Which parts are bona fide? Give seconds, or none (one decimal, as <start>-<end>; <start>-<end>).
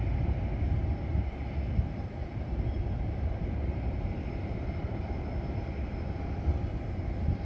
0.0-1.1; 5.0-7.5